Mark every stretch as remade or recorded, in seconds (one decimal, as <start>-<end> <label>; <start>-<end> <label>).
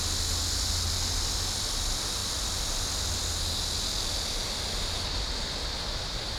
0.0-6.4 recorded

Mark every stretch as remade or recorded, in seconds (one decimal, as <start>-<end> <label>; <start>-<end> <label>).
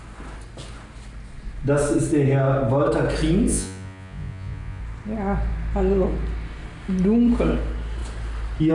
0.0-3.5 recorded; 3.5-4.8 remade; 4.8-8.7 recorded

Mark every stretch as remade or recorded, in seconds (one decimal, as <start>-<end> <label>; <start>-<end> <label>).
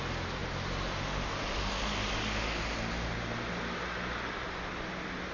0.0-5.3 recorded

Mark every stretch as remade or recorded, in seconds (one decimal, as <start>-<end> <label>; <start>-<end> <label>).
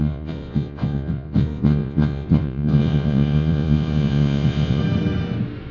0.0-4.8 remade; 4.8-5.7 recorded